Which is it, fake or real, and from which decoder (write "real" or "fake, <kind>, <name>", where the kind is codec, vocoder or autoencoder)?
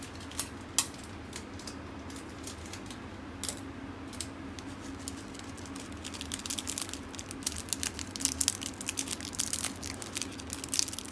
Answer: real